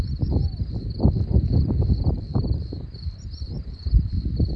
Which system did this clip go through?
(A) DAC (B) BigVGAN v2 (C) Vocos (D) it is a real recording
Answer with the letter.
B